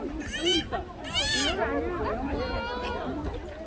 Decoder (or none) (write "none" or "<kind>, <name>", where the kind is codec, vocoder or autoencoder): none